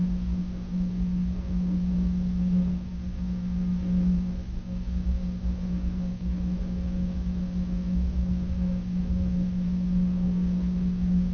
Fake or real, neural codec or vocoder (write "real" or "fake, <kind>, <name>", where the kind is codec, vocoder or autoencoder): fake, codec, SNAC